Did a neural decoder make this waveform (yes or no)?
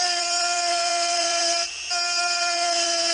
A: yes